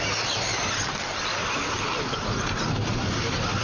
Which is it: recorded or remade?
recorded